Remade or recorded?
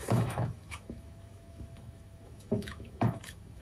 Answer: remade